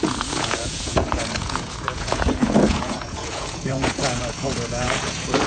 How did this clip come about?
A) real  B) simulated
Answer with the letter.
B